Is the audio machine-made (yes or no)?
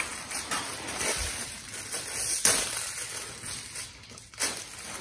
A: no